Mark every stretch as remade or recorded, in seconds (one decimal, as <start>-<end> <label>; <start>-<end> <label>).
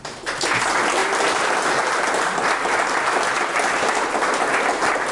0.0-1.0 recorded; 1.0-3.5 remade; 3.5-5.1 recorded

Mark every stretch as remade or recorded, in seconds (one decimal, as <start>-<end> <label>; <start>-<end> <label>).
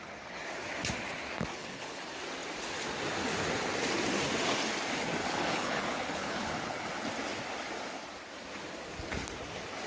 0.0-1.5 recorded; 1.5-2.0 remade; 2.0-5.2 recorded; 5.2-6.9 remade; 6.9-9.9 recorded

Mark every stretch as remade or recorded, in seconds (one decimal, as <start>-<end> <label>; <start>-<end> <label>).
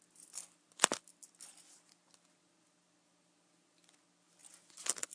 0.0-5.1 recorded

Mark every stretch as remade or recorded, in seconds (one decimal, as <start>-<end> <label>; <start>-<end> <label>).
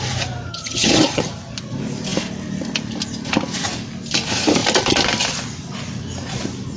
0.0-0.5 recorded; 0.5-1.3 remade; 1.3-6.8 recorded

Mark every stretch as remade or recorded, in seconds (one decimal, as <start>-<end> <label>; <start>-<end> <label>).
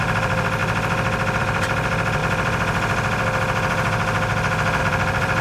0.0-0.6 remade; 0.6-1.4 recorded; 1.4-2.2 remade; 2.2-4.8 recorded; 4.8-5.4 remade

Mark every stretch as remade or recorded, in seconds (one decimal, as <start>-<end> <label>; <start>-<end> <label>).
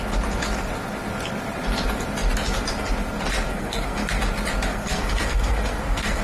0.0-3.5 recorded; 3.5-4.2 remade; 4.2-4.7 recorded; 4.7-6.2 remade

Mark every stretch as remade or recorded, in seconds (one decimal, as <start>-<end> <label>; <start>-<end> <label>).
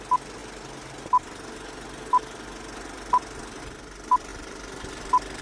0.0-5.4 recorded